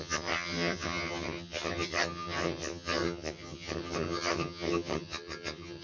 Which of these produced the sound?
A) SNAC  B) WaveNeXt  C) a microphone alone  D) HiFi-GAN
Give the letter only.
D